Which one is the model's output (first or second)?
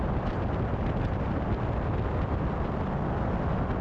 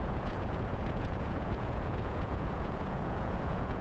second